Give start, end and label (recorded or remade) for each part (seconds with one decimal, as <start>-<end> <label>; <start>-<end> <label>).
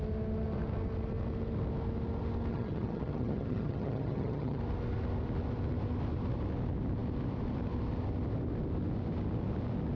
0.0-2.5 recorded; 2.5-4.6 remade; 4.6-10.0 recorded